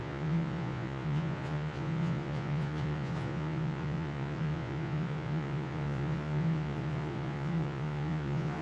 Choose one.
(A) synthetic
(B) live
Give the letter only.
A